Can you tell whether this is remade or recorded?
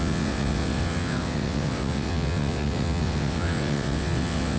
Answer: remade